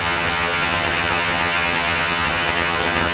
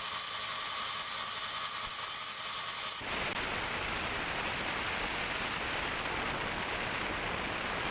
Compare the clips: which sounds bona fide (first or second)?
second